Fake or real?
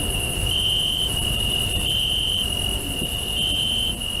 real